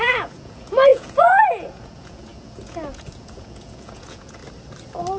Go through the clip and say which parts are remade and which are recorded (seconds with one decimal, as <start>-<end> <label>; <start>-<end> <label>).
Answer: 0.0-4.4 remade; 4.4-5.2 recorded